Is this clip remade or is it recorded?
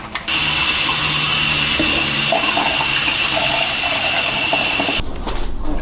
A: recorded